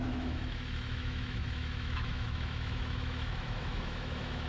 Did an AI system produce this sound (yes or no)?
yes